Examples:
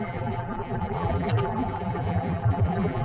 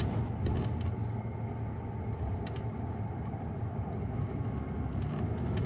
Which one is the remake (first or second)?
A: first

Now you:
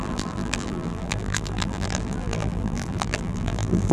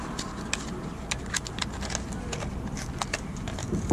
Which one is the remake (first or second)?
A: first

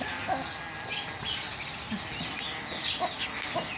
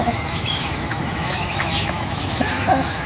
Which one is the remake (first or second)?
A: second